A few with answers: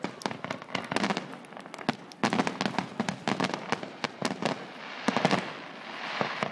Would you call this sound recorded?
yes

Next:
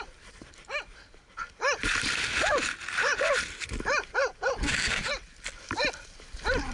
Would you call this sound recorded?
yes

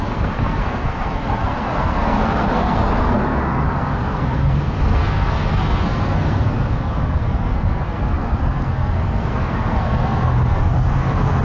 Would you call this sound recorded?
no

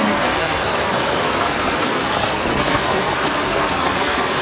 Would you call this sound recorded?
no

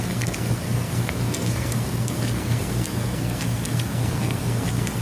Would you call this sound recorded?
no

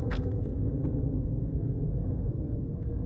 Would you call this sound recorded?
no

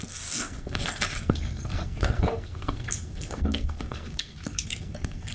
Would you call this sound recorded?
no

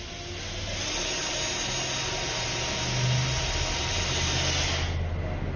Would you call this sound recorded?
yes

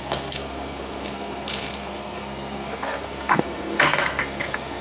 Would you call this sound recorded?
no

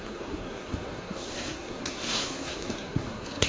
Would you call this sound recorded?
no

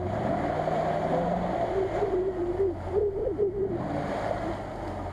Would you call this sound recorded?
yes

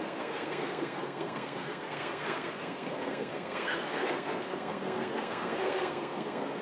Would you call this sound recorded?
no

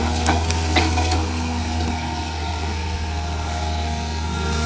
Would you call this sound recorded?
no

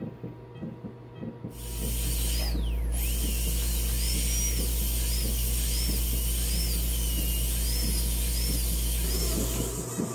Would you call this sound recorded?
yes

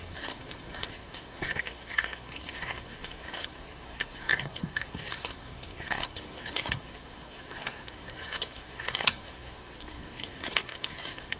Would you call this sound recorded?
no